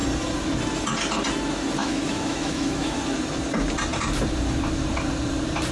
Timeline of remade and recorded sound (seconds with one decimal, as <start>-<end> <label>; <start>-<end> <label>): 0.0-1.8 recorded; 1.8-3.0 remade; 3.0-5.7 recorded